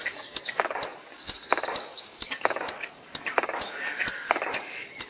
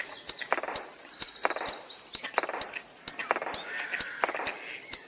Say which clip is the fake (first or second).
first